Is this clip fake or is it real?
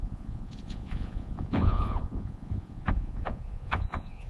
fake